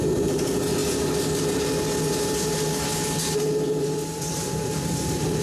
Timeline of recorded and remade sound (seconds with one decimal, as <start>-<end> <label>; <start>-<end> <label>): 0.0-0.8 remade; 0.8-3.8 recorded; 3.8-5.4 remade